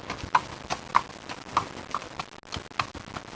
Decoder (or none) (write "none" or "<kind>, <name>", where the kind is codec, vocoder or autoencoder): none